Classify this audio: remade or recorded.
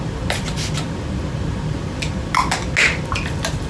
recorded